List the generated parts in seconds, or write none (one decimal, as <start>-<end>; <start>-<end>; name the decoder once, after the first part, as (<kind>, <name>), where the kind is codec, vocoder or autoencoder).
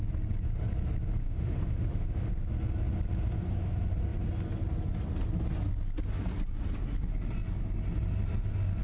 1.2-2.3 (autoencoder, DAC-VAE)